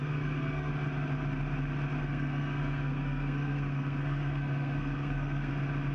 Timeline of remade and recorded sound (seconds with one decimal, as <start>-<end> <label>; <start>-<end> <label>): 0.0-0.7 remade; 0.7-2.0 recorded; 2.0-5.5 remade; 5.5-5.9 recorded